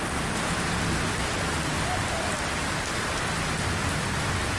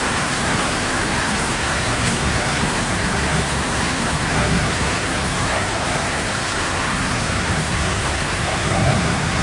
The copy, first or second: second